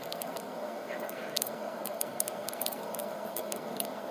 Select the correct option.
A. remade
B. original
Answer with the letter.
A